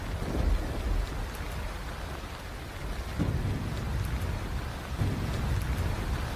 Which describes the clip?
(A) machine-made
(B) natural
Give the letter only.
B